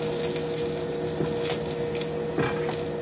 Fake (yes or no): no